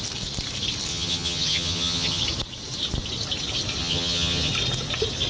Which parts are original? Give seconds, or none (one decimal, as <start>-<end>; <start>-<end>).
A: 0.0-0.9; 2.2-3.8; 4.5-5.3